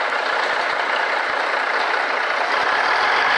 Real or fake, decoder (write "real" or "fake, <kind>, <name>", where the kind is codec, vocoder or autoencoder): real